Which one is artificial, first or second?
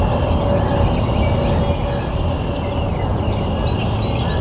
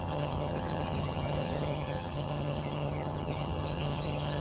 second